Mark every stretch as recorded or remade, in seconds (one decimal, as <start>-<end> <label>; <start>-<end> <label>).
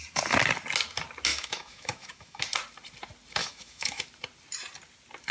0.0-1.3 recorded; 1.3-2.4 remade; 2.4-3.4 recorded; 3.4-4.0 remade; 4.0-5.3 recorded